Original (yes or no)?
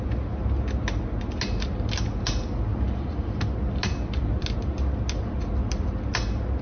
yes